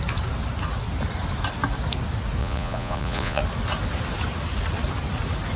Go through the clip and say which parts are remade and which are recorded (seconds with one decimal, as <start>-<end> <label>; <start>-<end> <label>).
0.0-2.4 recorded; 2.4-3.4 remade; 3.4-5.6 recorded